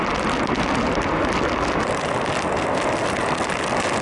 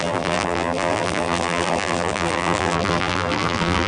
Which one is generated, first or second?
second